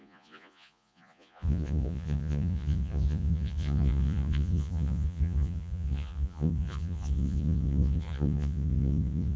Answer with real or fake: fake